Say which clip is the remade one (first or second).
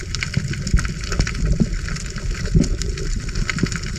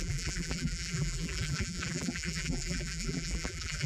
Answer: second